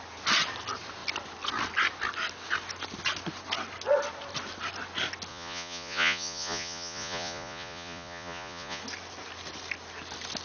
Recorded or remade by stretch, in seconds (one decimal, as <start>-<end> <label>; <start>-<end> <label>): 0.0-5.3 recorded; 5.3-8.8 remade; 8.8-10.4 recorded